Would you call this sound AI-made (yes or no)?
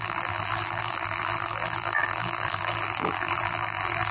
yes